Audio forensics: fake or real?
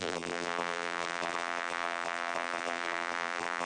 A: fake